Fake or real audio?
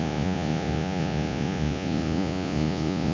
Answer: fake